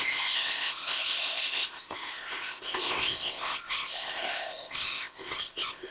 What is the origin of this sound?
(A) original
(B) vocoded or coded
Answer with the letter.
B